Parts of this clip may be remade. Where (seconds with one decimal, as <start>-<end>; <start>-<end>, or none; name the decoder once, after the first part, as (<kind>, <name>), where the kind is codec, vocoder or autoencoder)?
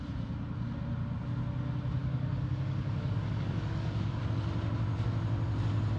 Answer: 2.0-4.2 (codec, DAC)